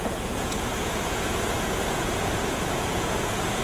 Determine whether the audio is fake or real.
fake